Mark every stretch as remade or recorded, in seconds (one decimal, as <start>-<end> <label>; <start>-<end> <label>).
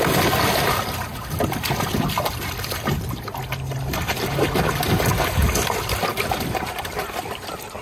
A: 0.0-7.8 recorded